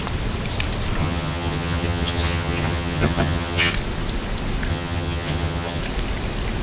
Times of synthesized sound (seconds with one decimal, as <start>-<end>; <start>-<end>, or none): 1.0-3.7; 4.7-5.8